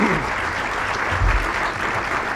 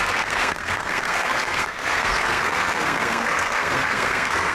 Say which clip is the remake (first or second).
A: second